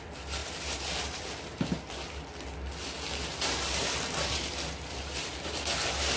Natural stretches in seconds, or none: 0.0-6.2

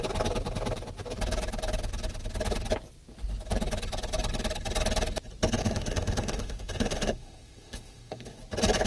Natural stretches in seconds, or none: 0.0-5.6; 8.4-8.9

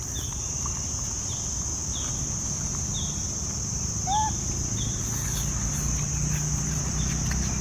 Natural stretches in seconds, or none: 0.0-7.6

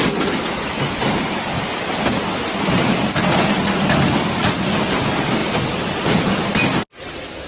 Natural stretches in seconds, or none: 0.0-5.4; 6.2-7.5

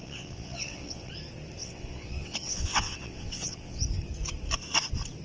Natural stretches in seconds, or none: 1.1-1.6; 3.8-5.2

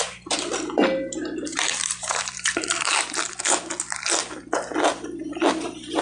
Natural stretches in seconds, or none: 0.0-1.5; 3.3-6.0